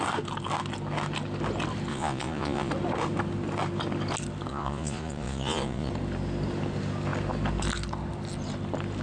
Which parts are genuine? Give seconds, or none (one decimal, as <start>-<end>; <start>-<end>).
0.0-1.9; 2.7-4.5; 5.9-9.0